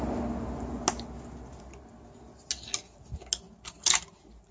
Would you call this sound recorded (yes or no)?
yes